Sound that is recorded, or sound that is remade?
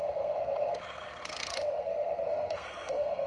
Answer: remade